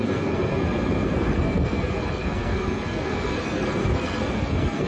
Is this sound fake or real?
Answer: fake